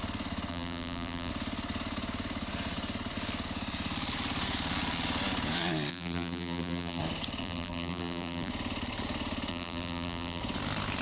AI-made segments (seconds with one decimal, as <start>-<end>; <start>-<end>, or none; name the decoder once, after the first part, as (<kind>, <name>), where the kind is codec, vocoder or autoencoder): 0.5-1.3 (vocoder, BigVGAN v2); 5.9-7.0; 7.4-8.5; 9.5-10.4